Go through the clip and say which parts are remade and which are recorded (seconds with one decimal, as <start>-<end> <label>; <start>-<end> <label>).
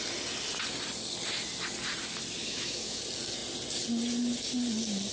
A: 0.0-2.4 recorded; 2.4-3.0 remade; 3.0-5.1 recorded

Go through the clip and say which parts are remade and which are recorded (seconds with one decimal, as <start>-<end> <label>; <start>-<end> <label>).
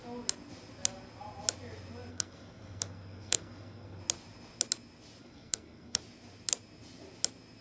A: 0.0-2.1 recorded; 2.1-4.0 remade; 4.0-5.2 recorded; 5.2-6.0 remade; 6.0-7.6 recorded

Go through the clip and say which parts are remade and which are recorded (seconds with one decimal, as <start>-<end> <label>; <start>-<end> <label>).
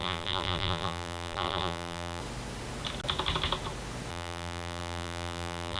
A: 0.0-2.2 remade; 2.2-4.1 recorded; 4.1-5.8 remade